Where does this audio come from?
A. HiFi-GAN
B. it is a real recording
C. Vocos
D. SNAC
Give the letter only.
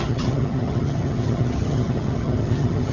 A